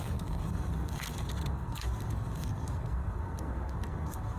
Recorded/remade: remade